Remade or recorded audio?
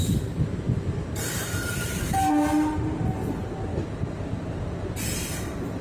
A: recorded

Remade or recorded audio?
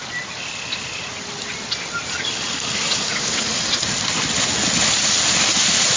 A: recorded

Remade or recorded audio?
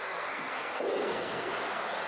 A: remade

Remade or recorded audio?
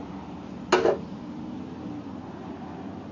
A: recorded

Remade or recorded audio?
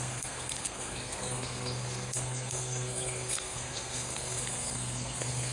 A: remade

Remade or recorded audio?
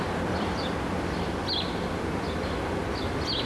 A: recorded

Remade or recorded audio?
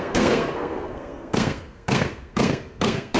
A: remade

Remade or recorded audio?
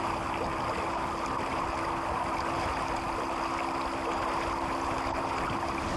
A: recorded